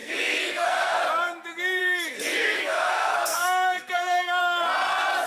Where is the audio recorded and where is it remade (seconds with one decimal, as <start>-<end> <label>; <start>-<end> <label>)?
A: 0.0-1.0 remade; 1.0-1.8 recorded; 1.8-4.4 remade; 4.4-5.3 recorded